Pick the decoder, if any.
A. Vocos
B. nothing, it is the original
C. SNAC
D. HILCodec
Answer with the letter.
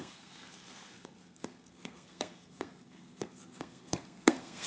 C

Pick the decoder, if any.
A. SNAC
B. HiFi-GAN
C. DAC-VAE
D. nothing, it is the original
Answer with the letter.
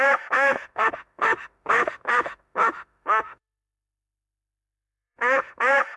C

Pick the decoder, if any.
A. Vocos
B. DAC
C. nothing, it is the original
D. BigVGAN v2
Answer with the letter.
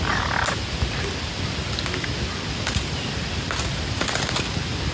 C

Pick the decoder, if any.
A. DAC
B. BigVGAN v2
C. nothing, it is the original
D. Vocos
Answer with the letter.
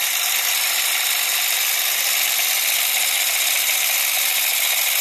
C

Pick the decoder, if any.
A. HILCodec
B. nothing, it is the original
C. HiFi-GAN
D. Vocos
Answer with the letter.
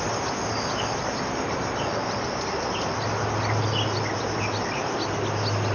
B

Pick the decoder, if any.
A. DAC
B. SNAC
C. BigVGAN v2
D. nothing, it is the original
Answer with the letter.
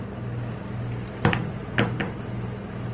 D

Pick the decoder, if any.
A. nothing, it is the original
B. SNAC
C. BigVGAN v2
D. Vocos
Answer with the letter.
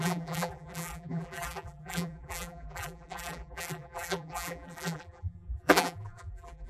C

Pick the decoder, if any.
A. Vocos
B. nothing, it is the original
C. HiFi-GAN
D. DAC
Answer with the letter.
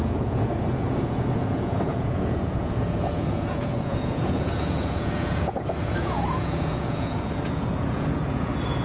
A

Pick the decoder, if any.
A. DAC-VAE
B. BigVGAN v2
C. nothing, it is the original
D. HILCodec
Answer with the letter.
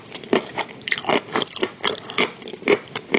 B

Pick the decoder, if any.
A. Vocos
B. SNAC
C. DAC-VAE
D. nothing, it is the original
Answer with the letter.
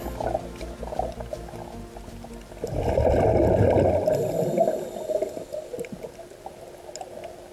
D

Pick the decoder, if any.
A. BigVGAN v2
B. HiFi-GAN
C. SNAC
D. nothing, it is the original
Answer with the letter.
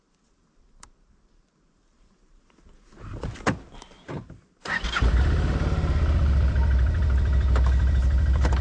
A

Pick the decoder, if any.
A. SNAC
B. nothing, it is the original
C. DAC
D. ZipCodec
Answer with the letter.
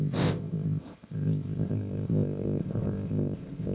D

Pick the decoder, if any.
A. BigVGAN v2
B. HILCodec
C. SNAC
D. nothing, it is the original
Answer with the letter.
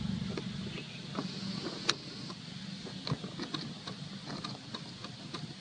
D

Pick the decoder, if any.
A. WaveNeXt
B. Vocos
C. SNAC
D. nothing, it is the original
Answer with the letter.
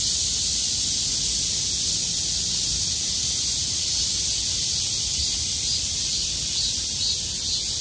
D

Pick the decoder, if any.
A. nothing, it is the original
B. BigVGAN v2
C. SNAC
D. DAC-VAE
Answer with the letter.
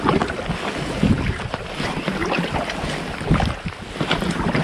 A